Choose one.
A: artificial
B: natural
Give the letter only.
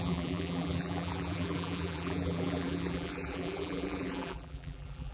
A